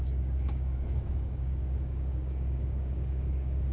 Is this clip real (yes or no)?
no